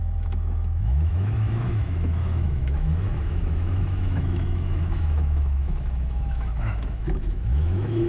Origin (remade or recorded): remade